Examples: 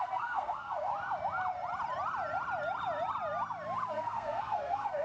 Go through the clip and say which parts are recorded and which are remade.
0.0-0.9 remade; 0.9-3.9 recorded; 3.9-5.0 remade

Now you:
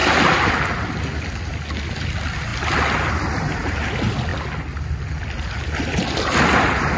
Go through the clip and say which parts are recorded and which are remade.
0.0-7.0 recorded